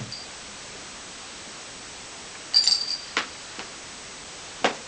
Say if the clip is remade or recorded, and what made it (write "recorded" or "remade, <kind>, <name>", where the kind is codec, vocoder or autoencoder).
recorded